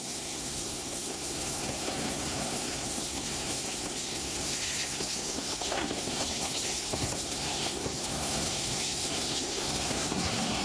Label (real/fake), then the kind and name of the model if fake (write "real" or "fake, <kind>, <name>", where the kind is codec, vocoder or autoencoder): fake, codec, SNAC